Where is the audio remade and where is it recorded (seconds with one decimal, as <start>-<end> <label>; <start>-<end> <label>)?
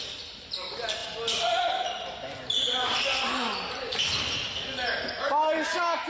0.0-6.1 recorded